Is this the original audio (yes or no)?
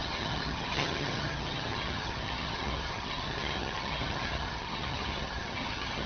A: no